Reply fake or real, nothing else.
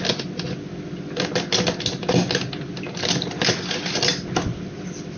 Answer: real